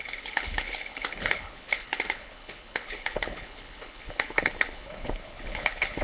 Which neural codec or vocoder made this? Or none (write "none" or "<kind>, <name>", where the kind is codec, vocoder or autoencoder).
codec, HILCodec